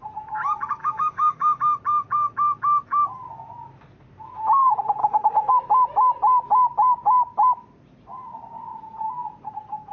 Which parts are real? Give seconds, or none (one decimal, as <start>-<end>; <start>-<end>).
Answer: 0.0-0.8; 1.6-5.0; 5.5-9.9